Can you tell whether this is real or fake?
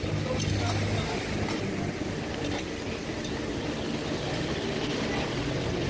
real